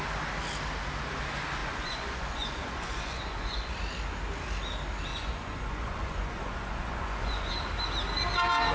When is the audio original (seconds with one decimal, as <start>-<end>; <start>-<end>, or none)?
0.0-1.6; 3.7-5.1; 7.5-8.7